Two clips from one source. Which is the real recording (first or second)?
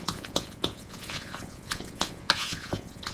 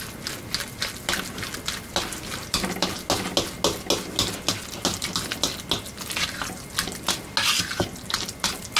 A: second